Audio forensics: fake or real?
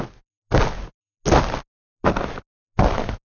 real